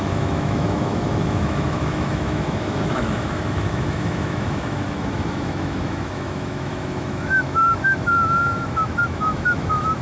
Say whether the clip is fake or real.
fake